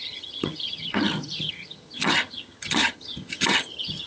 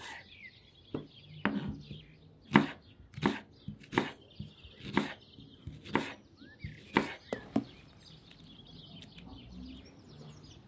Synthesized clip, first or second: first